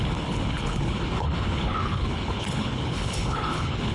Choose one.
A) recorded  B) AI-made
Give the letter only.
B